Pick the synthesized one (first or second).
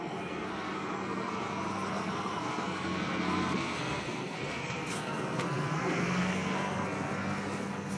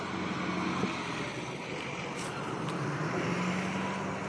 first